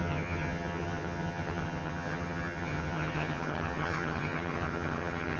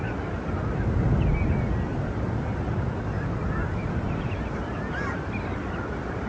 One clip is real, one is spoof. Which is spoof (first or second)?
first